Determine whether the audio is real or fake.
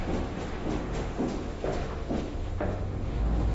fake